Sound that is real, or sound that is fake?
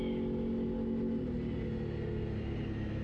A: real